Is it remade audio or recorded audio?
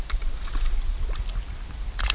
recorded